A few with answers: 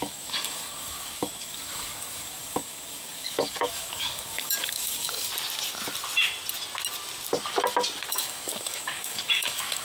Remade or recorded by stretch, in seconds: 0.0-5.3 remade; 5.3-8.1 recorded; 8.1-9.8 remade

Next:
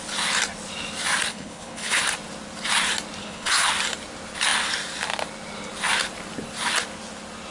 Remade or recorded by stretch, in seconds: 0.0-1.3 recorded; 1.3-2.0 remade; 2.0-3.2 recorded; 3.2-3.7 remade; 3.7-7.5 recorded

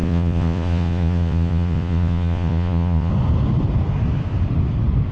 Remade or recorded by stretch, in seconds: 0.0-3.1 remade; 3.1-5.1 recorded

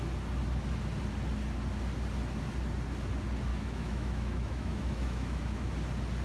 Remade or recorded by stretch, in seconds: 0.0-3.5 recorded; 3.5-5.7 remade; 5.7-6.2 recorded

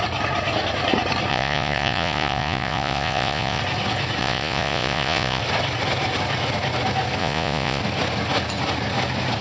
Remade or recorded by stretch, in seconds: 0.0-1.3 recorded; 1.3-3.6 remade; 3.6-4.2 recorded; 4.2-5.4 remade; 5.4-7.2 recorded; 7.2-7.8 remade; 7.8-9.4 recorded

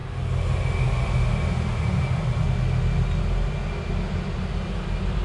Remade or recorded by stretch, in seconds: 0.0-5.2 recorded

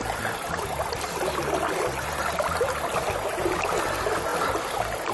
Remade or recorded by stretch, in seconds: 0.0-5.1 recorded